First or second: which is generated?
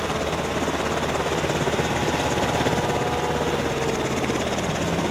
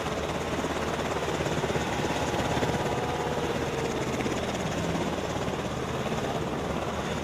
second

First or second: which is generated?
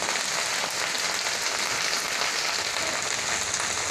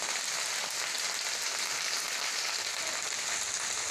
second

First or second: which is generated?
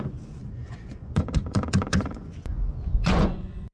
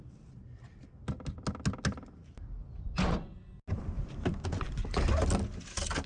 first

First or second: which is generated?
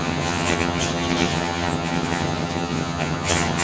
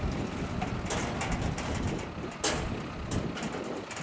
first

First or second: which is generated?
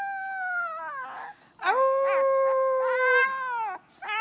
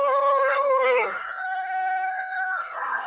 second